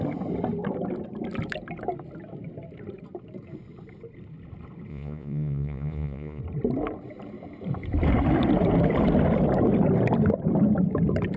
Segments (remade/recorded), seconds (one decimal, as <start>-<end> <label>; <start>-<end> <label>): 0.0-4.9 recorded; 4.9-6.4 remade; 6.4-11.4 recorded